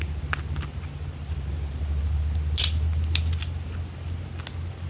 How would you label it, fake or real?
real